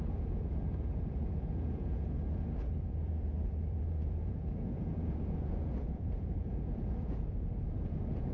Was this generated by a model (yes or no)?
yes